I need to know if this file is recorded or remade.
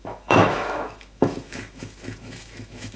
remade